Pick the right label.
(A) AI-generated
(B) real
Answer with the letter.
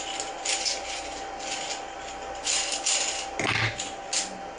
B